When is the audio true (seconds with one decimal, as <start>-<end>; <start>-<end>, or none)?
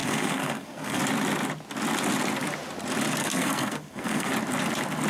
1.0-3.2; 4.3-5.1